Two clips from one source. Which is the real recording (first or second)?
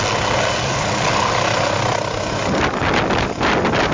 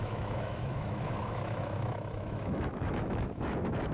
first